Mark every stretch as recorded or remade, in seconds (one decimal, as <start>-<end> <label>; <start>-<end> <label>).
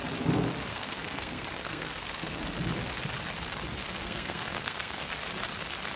0.0-0.7 recorded; 0.7-2.4 remade; 2.4-3.8 recorded; 3.8-5.1 remade; 5.1-6.0 recorded